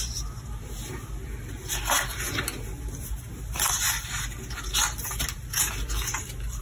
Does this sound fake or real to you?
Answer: real